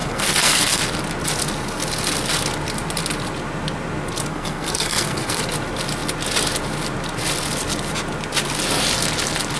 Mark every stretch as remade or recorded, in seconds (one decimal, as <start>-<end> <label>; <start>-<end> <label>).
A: 0.0-0.8 remade; 0.8-4.3 recorded; 4.3-5.4 remade; 5.4-9.6 recorded